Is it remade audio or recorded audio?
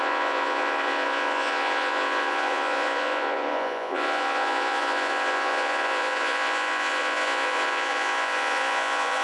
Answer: remade